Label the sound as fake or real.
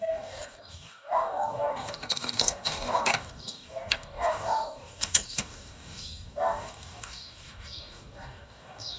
fake